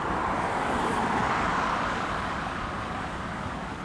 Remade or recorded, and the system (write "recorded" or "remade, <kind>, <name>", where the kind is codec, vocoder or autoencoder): remade, codec, DAC